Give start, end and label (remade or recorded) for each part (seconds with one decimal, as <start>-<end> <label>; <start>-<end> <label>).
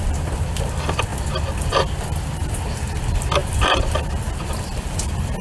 0.0-5.4 recorded